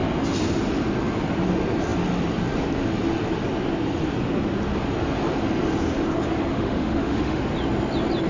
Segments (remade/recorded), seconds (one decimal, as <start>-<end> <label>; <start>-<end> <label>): 0.0-6.5 recorded; 6.5-7.4 remade; 7.4-8.3 recorded